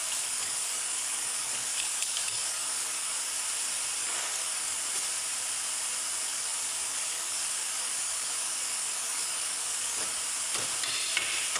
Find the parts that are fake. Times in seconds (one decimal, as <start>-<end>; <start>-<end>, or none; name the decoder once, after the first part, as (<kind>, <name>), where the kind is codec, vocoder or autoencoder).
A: 0.0-3.4 (codec, DAC); 4.0-4.8; 6.3-10.2